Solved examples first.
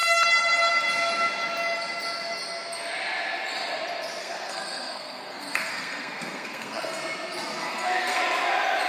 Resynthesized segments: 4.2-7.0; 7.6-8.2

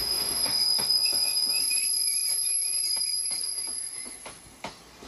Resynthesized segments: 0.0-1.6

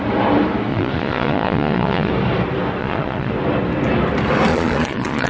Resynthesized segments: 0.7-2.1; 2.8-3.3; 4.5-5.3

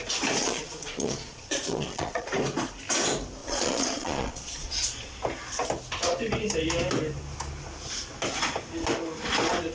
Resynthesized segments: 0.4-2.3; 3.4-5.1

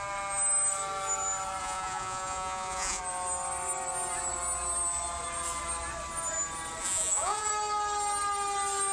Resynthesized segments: 1.6-3.0; 6.8-7.5

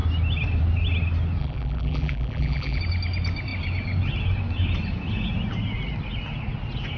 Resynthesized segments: 1.4-2.8

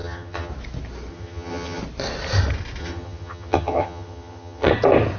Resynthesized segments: 0.0-0.5; 1.1-1.8; 2.8-4.7

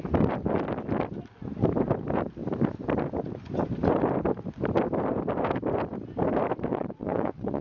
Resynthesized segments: 6.7-7.6